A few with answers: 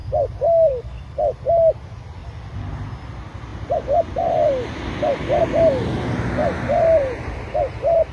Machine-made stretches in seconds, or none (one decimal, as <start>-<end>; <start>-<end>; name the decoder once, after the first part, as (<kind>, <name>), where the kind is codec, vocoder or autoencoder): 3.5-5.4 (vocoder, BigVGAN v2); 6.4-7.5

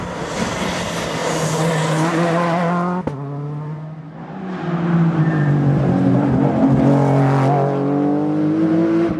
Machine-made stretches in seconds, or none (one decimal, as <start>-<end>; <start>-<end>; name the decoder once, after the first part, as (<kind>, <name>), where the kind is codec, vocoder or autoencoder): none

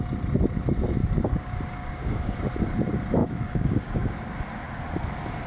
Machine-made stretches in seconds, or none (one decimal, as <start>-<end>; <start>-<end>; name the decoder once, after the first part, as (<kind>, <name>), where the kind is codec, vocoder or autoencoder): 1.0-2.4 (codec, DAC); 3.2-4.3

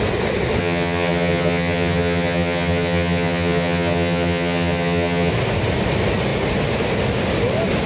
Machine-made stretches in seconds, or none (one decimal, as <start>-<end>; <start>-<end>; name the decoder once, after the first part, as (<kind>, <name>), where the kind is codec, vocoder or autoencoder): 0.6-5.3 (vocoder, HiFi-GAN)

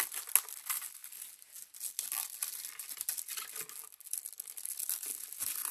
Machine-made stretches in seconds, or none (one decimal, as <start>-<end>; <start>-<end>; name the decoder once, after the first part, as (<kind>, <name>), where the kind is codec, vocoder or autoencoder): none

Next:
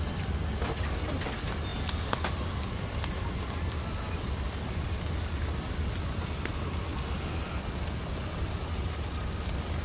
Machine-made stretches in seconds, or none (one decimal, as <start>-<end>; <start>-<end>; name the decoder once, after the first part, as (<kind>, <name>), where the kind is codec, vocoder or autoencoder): none

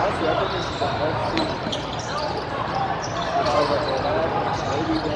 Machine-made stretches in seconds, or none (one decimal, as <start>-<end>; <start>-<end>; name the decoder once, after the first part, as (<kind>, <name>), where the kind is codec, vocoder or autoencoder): 0.0-5.2 (vocoder, BigVGAN v2)